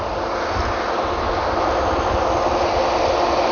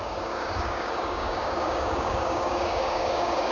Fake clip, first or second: second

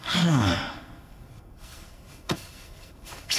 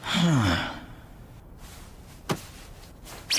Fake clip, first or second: first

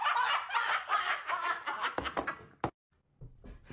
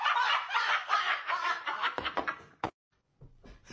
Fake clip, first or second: second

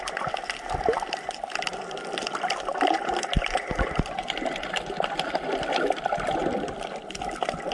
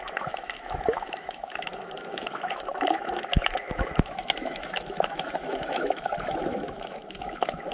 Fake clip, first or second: second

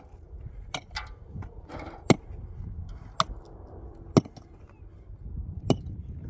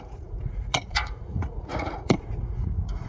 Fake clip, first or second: second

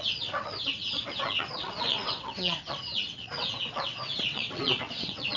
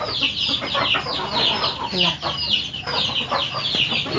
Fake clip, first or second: first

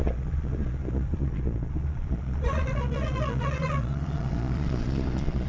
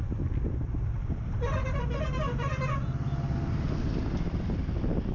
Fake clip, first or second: first